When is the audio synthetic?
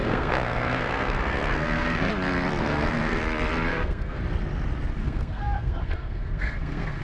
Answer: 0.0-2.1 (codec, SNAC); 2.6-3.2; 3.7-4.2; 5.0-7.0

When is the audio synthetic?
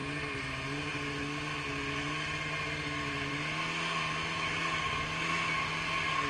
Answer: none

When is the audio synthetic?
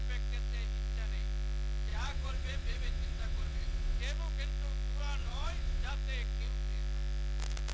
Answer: 1.9-4.0 (vocoder, WaveNeXt); 5.2-5.9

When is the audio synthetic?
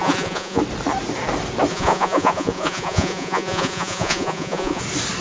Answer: 0.0-0.6 (vocoder, Vocos); 1.7-4.8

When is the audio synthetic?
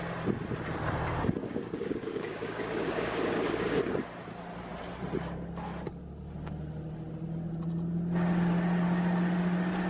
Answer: 1.4-3.8 (codec, DAC)